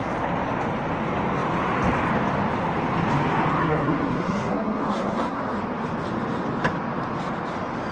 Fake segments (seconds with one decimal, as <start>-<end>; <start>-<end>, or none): 3.6-5.4